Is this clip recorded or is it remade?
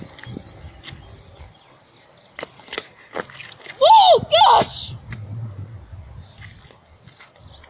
recorded